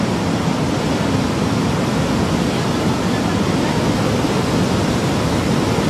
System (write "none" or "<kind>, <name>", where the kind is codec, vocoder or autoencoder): none